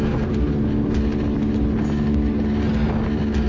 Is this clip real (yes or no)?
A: yes